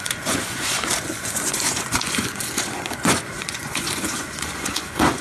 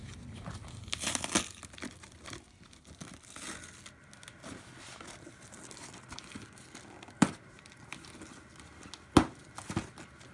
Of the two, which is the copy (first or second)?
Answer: first